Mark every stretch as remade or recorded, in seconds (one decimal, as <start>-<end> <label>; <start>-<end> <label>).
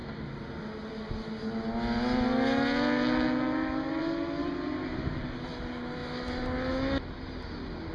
0.0-7.9 recorded